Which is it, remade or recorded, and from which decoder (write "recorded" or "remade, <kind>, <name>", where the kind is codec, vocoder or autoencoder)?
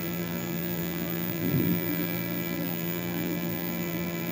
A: remade, vocoder, BigVGAN v2